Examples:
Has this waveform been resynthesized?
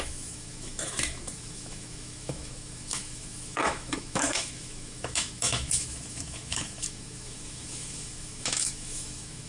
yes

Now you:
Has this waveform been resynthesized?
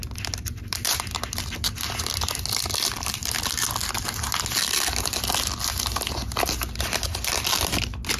no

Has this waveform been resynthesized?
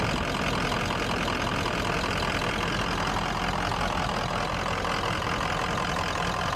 no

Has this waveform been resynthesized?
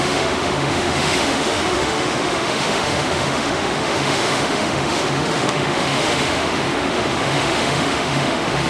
yes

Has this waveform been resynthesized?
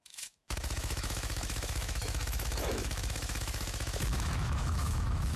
yes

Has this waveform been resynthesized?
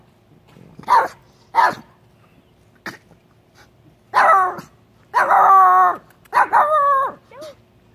no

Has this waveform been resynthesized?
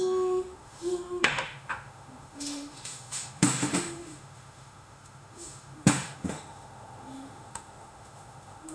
yes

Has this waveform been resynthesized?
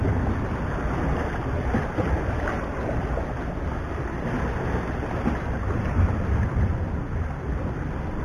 no